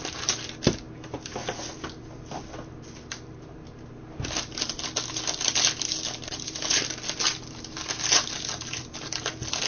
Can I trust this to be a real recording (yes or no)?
yes